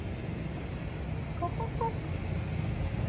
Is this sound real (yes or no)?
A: yes